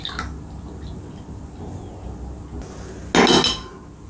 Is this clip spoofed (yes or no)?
no